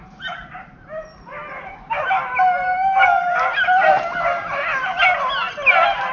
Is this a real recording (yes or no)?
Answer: yes